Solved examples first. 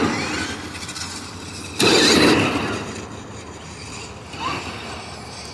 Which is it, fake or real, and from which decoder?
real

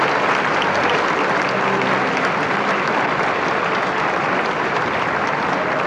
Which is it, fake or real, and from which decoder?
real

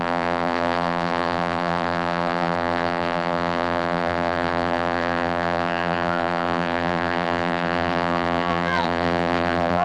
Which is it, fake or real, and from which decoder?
fake, vocoder, BigVGAN v2